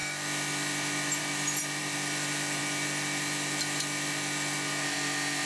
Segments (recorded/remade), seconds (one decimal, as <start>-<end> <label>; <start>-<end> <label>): 0.0-5.5 recorded